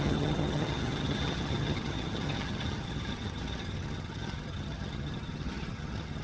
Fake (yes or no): yes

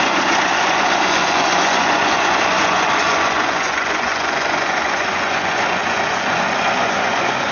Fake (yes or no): yes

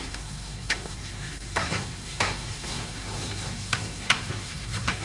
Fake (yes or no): yes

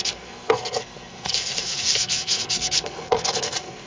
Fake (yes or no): yes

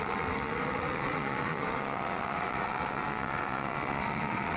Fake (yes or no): yes